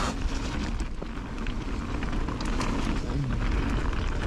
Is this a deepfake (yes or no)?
no